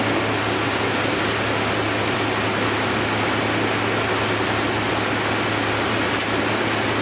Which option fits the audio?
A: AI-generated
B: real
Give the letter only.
B